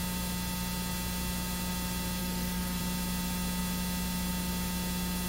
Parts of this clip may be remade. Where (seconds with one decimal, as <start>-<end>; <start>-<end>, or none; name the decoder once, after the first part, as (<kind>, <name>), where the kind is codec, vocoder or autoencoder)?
2.2-2.8 (codec, DAC)